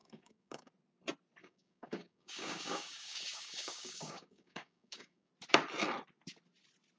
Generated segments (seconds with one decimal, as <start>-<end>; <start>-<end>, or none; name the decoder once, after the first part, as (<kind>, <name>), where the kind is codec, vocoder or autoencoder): 0.0-0.7 (codec, DAC); 1.4-5.3